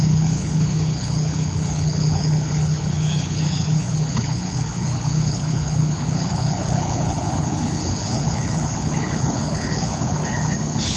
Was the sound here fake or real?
fake